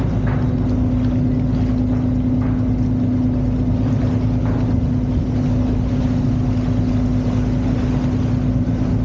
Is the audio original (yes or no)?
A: yes